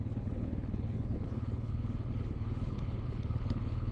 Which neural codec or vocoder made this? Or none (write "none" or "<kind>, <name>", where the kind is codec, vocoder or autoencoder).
codec, HILCodec